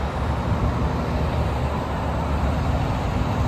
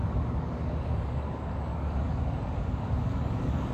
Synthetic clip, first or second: second